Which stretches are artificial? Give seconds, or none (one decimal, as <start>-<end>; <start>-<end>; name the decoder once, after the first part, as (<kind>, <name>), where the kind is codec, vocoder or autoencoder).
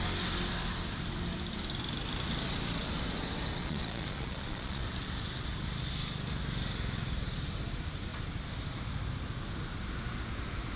3.6-4.8 (vocoder, Vocos)